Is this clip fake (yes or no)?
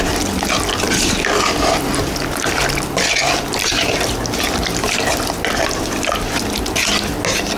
no